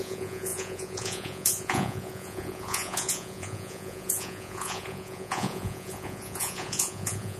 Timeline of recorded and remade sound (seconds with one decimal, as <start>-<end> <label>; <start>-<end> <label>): 0.0-7.4 remade

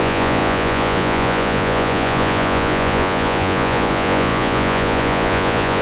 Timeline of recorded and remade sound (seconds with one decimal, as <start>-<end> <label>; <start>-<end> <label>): 0.0-5.8 remade